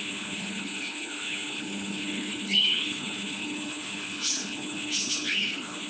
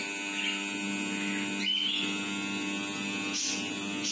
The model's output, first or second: first